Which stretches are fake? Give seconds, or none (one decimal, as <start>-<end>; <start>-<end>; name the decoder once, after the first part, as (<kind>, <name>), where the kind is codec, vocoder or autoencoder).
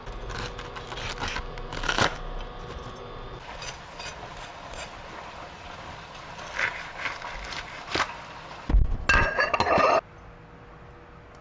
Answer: 4.5-5.2 (vocoder, Vocos)